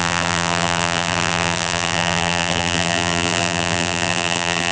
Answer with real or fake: fake